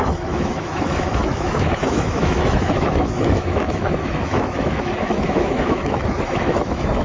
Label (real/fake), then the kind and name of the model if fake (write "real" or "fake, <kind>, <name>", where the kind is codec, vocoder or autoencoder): fake, autoencoder, DAC-VAE